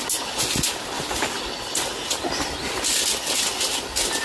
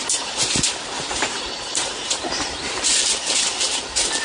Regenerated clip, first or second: second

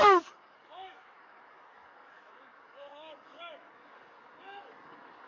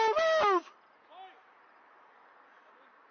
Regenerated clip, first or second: first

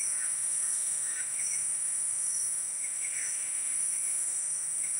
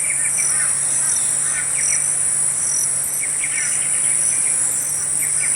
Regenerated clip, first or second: first